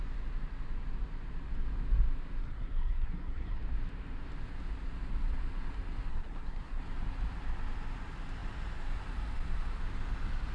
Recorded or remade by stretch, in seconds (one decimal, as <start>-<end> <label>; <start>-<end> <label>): 0.0-2.4 recorded; 2.4-3.6 remade; 3.6-6.1 recorded; 6.1-6.8 remade; 6.8-10.5 recorded